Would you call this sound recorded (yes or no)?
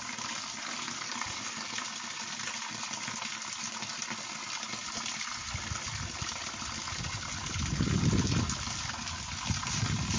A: yes